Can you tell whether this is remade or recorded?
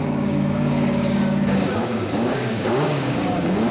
remade